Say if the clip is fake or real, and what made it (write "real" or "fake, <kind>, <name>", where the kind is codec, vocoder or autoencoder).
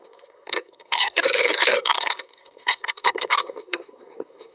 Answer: fake, codec, SNAC